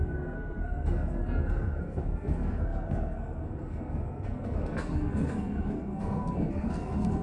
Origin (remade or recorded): remade